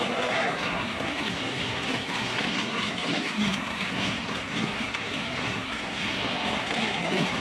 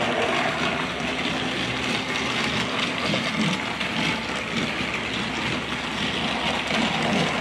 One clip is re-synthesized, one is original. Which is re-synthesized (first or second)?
first